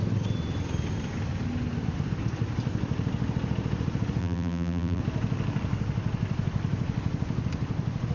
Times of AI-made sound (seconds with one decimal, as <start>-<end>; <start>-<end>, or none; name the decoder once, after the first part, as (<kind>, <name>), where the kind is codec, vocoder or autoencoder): 4.2-5.0 (vocoder, BigVGAN v2)